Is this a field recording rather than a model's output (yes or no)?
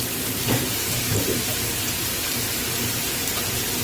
no